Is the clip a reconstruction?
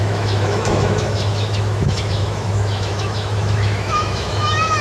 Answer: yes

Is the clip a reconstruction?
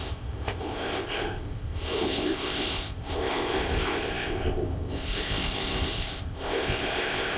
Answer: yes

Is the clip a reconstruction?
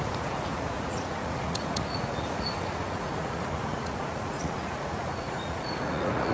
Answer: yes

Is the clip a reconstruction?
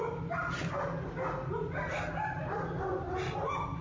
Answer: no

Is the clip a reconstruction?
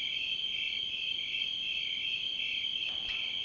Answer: no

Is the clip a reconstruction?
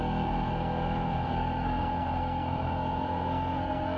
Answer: yes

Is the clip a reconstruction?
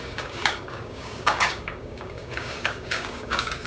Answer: yes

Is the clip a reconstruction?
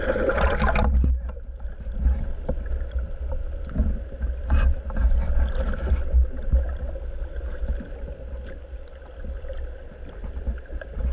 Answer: no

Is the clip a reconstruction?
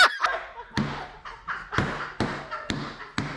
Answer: no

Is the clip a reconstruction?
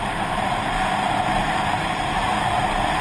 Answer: yes